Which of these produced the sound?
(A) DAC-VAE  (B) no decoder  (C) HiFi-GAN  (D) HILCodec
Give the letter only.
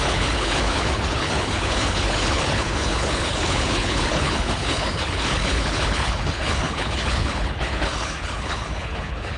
D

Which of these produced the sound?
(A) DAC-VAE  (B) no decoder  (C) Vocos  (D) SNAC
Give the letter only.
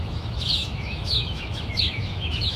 A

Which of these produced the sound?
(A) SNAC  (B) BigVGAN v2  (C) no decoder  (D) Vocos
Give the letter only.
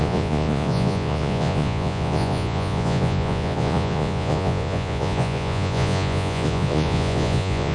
D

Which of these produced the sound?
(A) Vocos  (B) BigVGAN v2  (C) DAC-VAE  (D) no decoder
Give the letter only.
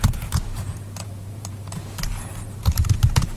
D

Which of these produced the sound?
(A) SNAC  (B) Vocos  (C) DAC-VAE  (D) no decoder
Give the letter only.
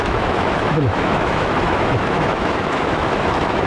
C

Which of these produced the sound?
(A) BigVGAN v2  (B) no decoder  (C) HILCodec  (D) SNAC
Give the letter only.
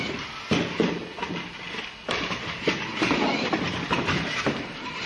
B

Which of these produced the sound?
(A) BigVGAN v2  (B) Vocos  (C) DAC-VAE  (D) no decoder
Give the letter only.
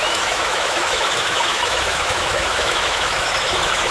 C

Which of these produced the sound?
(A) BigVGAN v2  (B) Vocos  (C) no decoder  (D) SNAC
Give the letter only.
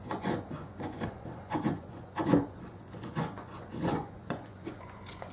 B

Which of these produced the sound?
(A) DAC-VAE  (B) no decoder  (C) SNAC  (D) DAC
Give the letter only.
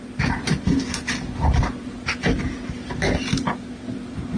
B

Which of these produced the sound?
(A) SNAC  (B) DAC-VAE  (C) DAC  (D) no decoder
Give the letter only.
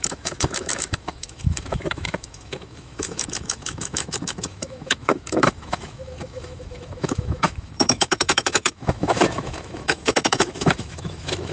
B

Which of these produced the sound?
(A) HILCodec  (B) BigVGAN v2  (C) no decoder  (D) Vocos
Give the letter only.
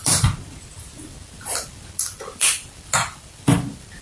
B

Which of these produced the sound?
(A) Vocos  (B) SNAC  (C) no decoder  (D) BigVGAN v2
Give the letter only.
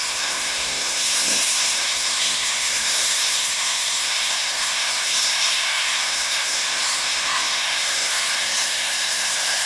B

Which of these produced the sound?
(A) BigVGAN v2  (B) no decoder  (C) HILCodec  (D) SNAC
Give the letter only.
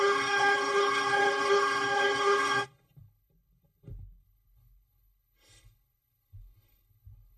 C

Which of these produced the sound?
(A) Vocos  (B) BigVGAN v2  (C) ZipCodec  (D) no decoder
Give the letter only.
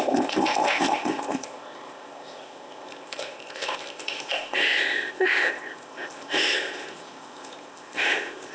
C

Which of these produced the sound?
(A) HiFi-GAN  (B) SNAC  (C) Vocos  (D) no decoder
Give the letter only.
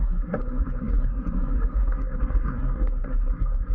B